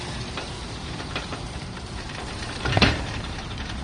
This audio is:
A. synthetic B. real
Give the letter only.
A